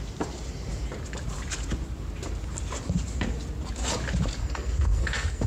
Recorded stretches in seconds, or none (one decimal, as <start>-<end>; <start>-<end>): 0.0-4.4